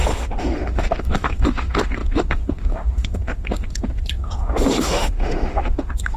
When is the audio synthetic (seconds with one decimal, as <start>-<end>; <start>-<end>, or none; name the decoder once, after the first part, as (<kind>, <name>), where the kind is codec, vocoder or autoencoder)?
0.0-6.2 (autoencoder, DAC-VAE)